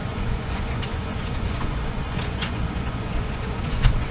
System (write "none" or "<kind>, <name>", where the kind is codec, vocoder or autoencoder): vocoder, Vocos